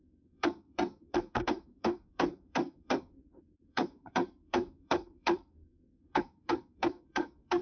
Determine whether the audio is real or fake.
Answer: fake